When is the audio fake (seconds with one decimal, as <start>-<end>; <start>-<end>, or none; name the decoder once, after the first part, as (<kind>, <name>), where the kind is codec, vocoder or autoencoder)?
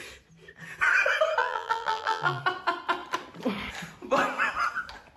1.4-2.4 (vocoder, BigVGAN v2)